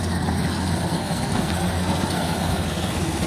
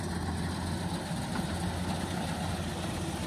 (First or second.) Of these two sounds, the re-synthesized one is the first